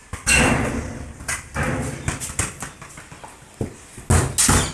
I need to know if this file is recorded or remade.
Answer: recorded